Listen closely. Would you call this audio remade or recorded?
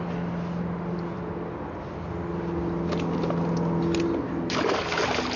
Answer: recorded